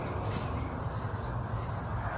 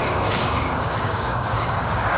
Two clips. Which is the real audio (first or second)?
first